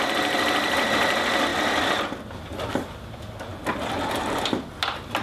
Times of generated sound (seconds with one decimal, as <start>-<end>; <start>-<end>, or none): none